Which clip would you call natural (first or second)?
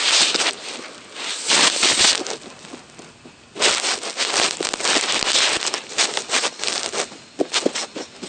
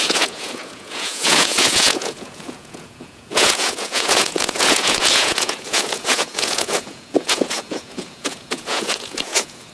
first